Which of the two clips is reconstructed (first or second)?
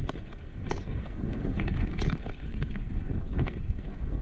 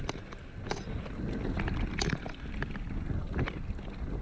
first